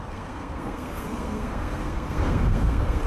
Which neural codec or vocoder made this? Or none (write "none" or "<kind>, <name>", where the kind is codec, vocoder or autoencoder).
codec, SNAC